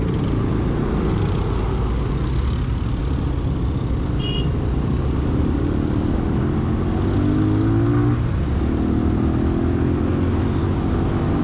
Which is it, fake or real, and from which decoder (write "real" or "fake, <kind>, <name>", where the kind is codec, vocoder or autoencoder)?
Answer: real